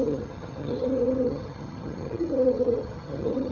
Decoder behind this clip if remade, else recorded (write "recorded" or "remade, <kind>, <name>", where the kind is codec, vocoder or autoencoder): remade, vocoder, HiFi-GAN